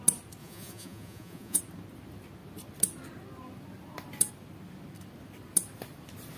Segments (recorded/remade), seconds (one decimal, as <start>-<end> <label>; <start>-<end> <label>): 0.0-0.4 recorded; 0.4-1.6 remade; 1.6-6.4 recorded